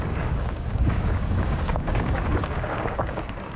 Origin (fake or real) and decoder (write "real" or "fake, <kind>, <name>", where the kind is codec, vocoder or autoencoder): fake, codec, DAC